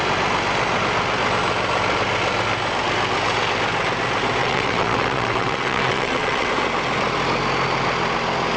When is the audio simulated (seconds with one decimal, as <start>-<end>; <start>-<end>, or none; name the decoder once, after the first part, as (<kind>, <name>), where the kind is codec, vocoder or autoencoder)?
4.4-6.5 (vocoder, WaveNeXt)